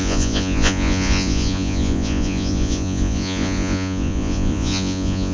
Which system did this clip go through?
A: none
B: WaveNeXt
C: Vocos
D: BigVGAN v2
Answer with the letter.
C